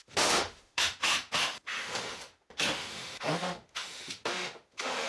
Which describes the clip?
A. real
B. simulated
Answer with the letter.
B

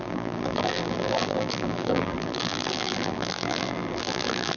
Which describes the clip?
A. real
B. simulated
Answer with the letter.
B